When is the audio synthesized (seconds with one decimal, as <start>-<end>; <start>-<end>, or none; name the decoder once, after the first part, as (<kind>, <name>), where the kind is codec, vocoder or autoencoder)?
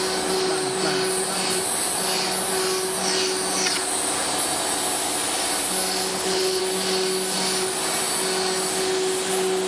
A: 6.1-6.6 (codec, HILCodec)